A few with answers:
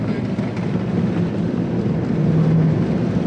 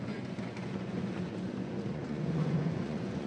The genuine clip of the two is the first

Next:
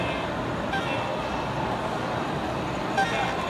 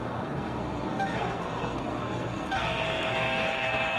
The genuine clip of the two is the first